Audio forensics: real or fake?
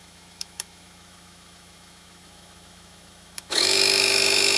fake